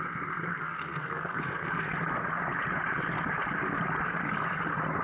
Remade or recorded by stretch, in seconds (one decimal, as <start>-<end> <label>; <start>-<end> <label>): 0.0-0.5 recorded; 0.5-1.8 remade; 1.8-5.0 recorded